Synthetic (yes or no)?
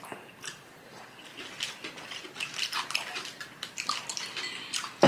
no